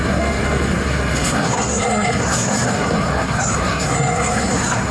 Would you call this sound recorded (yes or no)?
no